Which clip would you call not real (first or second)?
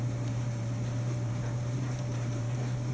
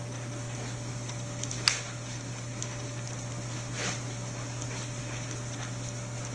first